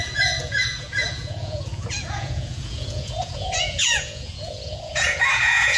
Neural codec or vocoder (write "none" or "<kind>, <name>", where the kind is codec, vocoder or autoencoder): vocoder, Vocos